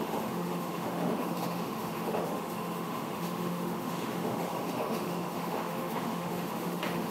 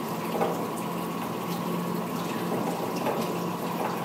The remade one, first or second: first